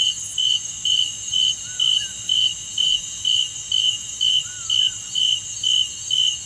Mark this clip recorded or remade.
recorded